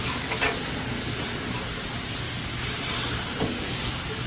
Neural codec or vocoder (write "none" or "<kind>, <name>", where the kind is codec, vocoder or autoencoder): none